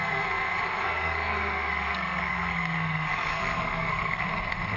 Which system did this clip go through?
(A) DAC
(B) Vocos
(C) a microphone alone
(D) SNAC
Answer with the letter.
D